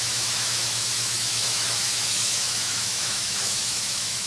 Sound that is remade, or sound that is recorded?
remade